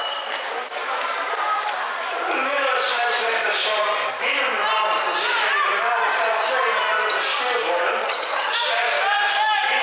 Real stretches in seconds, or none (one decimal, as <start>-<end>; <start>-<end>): 0.0-8.0; 8.5-9.8